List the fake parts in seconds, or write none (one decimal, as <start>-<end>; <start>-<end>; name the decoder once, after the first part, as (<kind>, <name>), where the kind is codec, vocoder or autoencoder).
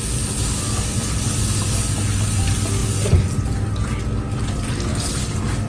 0.4-1.4 (vocoder, BigVGAN v2); 2.8-4.0; 4.9-5.7